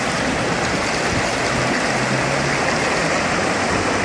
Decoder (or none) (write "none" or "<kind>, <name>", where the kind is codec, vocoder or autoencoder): none